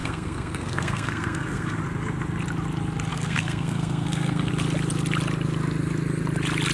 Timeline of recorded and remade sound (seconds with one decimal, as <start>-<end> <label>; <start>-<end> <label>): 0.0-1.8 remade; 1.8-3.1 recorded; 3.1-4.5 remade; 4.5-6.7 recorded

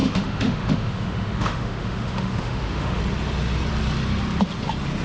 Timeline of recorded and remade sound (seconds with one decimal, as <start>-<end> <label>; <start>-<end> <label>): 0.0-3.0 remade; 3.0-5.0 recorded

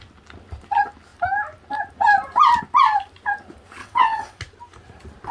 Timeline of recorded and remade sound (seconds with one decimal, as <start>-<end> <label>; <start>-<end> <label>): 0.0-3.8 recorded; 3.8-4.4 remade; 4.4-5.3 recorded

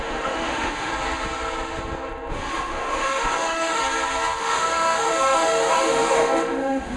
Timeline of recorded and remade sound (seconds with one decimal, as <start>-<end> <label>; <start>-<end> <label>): 0.0-0.9 remade; 0.9-2.3 recorded; 2.3-3.8 remade; 3.8-4.4 recorded; 4.4-7.0 remade

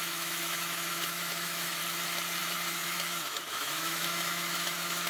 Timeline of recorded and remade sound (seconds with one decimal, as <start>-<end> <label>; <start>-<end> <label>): 0.0-1.8 remade; 1.8-2.4 recorded; 2.4-5.1 remade

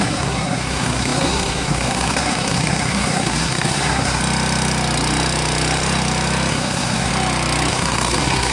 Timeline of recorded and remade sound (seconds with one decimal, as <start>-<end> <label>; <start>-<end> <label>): 0.0-4.2 remade; 4.2-6.5 recorded; 6.5-7.1 remade; 7.1-7.7 recorded; 7.7-8.5 remade

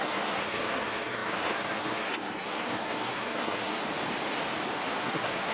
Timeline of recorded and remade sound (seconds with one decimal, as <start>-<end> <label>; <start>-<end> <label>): 0.0-3.8 remade; 3.8-5.0 recorded; 5.0-5.5 remade